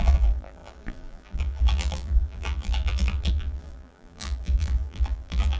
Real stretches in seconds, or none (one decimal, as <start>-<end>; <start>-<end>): none